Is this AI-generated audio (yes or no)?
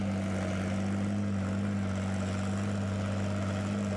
no